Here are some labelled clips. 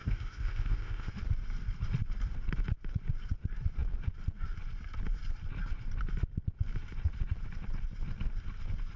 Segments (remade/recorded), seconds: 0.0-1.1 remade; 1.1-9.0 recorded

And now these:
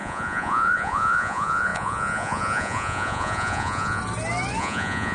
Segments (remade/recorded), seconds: 0.0-4.0 remade; 4.0-4.6 recorded; 4.6-5.1 remade